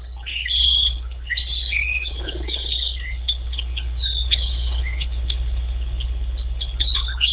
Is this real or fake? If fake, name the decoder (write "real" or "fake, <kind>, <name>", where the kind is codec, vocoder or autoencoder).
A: fake, codec, HILCodec